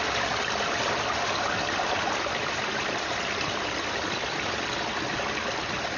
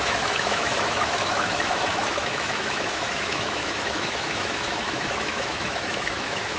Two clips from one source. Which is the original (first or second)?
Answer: first